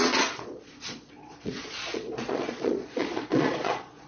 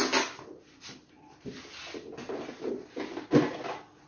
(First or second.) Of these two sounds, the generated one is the first